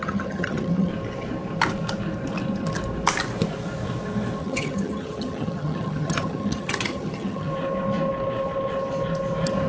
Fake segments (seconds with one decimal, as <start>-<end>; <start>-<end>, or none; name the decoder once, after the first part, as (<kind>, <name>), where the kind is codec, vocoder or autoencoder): 0.0-0.9 (vocoder, HiFi-GAN); 4.4-7.5